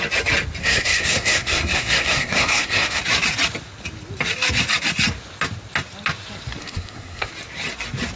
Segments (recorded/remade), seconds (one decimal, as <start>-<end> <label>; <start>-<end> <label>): 0.0-0.6 recorded; 0.6-3.0 remade; 3.0-6.6 recorded; 6.6-7.3 remade; 7.3-8.2 recorded